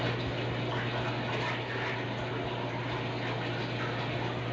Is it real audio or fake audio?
real